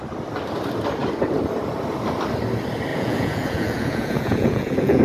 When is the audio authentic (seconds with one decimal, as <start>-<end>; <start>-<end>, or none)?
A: 0.0-2.9

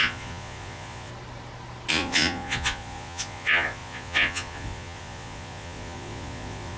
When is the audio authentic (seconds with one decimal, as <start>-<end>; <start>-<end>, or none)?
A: 1.1-1.9